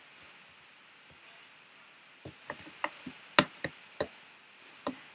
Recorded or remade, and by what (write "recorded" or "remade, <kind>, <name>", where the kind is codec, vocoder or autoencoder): recorded